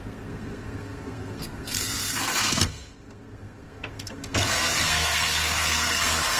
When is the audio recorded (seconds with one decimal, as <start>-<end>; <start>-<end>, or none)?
none

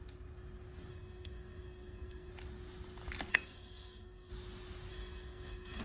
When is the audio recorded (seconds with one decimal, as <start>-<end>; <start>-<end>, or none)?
0.0-0.9; 2.3-3.3; 4.3-4.9

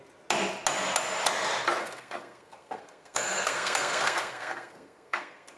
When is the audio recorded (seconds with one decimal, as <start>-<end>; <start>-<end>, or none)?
0.0-1.8

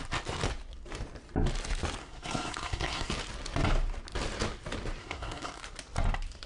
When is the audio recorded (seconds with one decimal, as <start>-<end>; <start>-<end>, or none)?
0.0-2.0; 3.1-5.0; 5.6-6.5

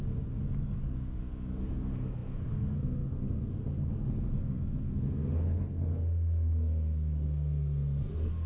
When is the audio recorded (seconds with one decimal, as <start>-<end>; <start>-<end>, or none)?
none

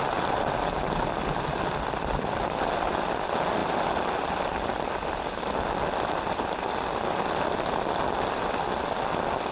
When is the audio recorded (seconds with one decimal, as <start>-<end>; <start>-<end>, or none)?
0.0-9.5

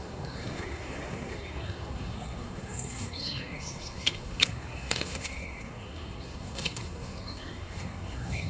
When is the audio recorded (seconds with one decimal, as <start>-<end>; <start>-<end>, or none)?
none